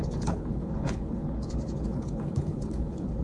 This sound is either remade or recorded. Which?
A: remade